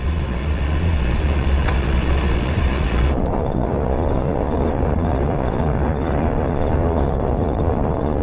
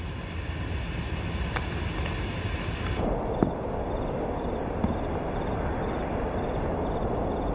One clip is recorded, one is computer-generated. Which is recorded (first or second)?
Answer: second